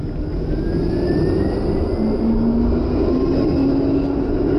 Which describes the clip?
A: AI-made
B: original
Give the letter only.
B